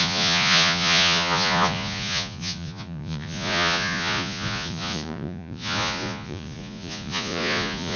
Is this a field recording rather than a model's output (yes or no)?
no